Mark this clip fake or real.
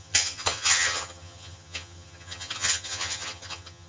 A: fake